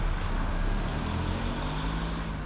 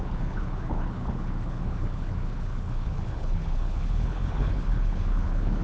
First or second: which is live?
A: first